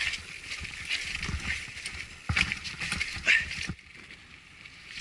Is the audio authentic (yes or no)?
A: yes